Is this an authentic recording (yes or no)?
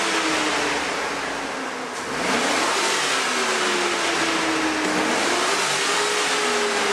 yes